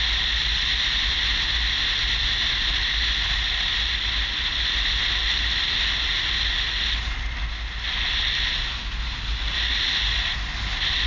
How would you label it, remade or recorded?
recorded